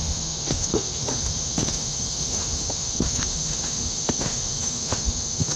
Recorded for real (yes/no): no